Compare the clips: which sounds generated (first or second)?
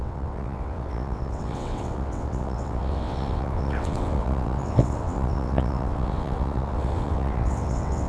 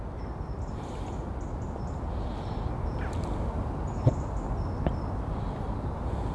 first